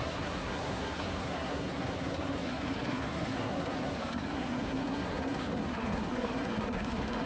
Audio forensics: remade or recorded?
remade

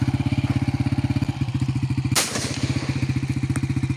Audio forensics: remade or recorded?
recorded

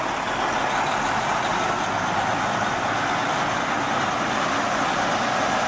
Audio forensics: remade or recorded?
recorded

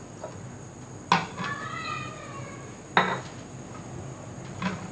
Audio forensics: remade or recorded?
recorded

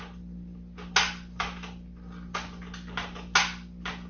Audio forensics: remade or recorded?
recorded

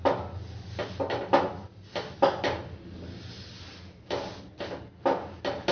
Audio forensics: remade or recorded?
recorded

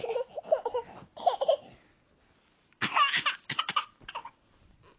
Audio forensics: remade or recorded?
recorded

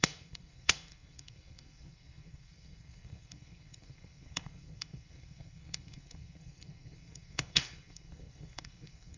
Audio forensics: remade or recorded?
remade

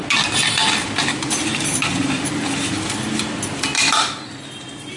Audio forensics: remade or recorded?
recorded